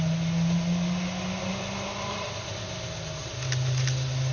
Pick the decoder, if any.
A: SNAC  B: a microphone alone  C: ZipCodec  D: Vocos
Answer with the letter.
B